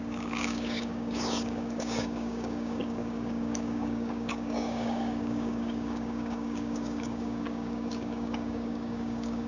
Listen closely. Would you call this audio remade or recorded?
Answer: remade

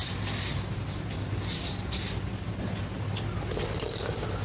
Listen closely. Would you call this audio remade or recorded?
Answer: recorded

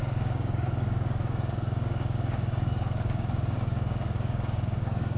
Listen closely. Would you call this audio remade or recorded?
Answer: remade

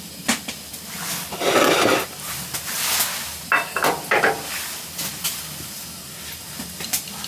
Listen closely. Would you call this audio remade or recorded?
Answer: recorded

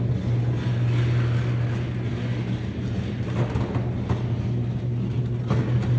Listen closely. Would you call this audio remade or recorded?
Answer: recorded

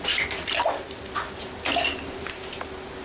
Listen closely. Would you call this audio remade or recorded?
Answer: recorded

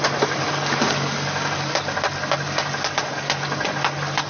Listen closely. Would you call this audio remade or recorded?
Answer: recorded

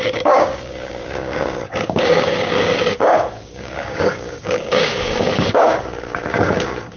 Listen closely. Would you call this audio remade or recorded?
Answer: remade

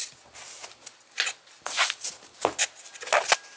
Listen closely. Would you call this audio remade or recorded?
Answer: recorded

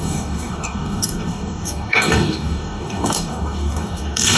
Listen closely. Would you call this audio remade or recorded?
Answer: remade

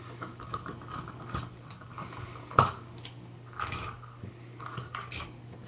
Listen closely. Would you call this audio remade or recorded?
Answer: remade